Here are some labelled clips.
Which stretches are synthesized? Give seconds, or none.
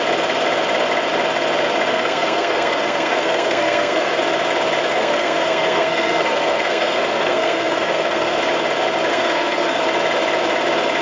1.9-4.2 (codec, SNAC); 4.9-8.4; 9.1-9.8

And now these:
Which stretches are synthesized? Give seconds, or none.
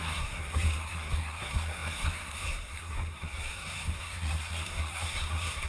0.0-5.7 (codec, SNAC)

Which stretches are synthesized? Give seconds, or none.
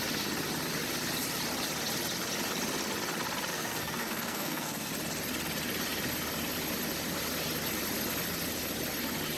3.5-4.9 (codec, SNAC)